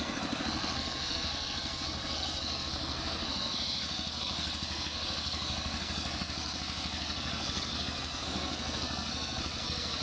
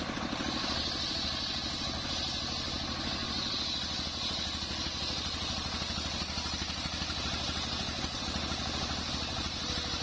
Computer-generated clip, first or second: first